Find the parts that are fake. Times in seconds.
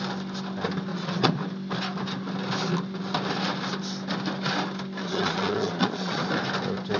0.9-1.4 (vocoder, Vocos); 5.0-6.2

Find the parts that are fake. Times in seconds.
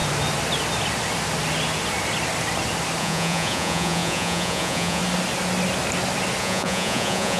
3.0-5.0 (vocoder, Vocos); 6.4-7.4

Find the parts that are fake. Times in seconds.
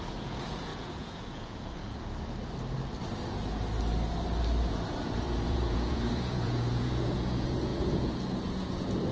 0.0-1.8 (vocoder, Vocos); 4.7-9.1